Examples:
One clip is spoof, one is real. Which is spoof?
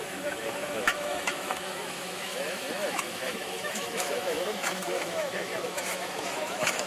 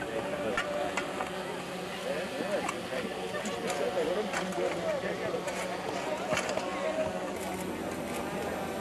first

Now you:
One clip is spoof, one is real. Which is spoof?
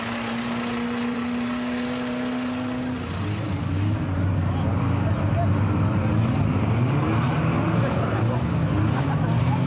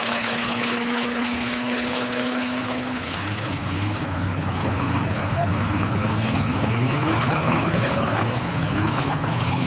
second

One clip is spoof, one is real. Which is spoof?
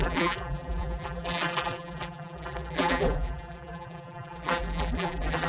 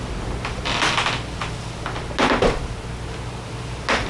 first